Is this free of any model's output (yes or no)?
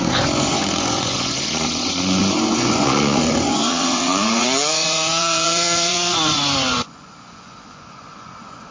no